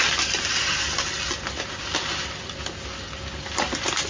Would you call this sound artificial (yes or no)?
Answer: no